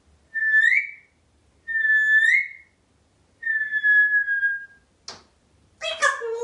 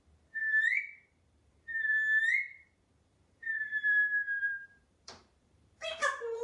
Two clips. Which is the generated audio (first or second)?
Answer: second